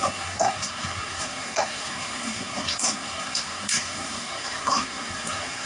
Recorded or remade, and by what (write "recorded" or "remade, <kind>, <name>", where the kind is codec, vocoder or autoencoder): remade, codec, SNAC